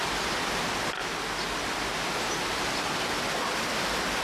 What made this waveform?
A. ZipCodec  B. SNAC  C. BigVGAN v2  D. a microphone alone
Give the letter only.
D